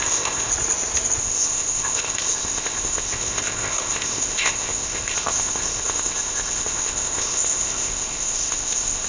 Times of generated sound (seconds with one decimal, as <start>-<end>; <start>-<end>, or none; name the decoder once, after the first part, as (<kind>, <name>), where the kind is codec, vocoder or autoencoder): 0.0-0.5 (codec, ZipCodec); 1.2-9.1